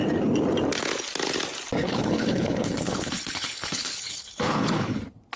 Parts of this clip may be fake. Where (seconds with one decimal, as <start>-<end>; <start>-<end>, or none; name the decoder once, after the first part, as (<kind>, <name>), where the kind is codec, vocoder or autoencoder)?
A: 1.8-5.0 (codec, HILCodec)